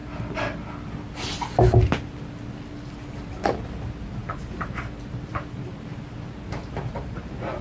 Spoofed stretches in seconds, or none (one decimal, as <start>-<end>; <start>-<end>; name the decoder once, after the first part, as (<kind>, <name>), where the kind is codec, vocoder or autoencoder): 3.3-5.9 (vocoder, BigVGAN v2); 6.5-7.6